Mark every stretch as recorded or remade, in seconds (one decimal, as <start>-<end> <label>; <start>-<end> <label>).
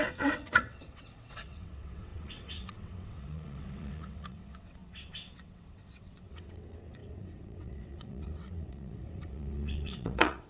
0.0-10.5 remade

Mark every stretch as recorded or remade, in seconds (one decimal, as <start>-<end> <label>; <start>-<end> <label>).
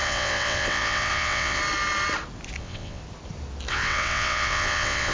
0.0-1.6 remade; 1.6-2.6 recorded; 2.6-3.0 remade; 3.0-3.7 recorded; 3.7-5.1 remade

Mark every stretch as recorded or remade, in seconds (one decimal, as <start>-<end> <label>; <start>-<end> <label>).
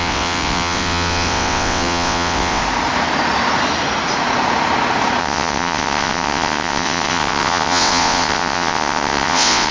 0.0-2.6 remade; 2.6-5.2 recorded; 5.2-9.7 remade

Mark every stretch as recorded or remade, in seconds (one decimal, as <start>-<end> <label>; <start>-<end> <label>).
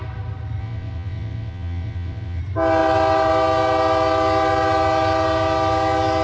0.0-0.6 recorded; 0.6-2.4 remade; 2.4-6.2 recorded